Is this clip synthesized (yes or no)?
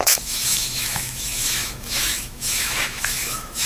yes